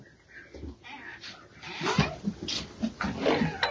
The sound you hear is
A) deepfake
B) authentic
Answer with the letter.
B